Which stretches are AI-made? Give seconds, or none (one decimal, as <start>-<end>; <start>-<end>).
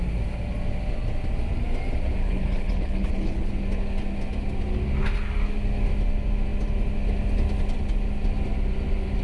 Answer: 2.2-3.5